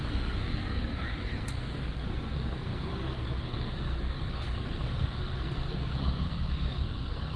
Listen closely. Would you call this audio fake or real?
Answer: fake